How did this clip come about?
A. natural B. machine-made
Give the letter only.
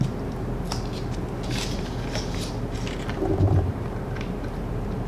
A